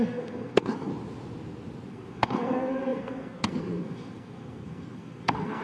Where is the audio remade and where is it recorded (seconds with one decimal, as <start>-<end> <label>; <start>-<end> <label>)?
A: 0.0-0.9 remade; 0.9-1.9 recorded; 1.9-5.6 remade